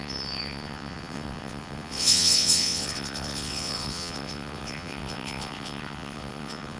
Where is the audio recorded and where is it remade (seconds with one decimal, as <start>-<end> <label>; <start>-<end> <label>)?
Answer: 0.0-6.8 remade